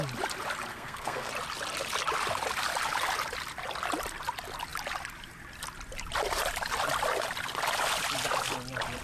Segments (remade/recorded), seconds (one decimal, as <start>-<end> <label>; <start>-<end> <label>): 0.0-0.7 recorded; 0.7-1.3 remade; 1.3-9.0 recorded